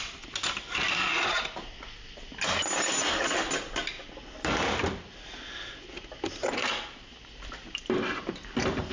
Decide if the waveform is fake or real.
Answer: real